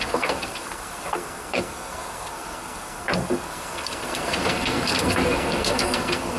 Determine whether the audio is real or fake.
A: fake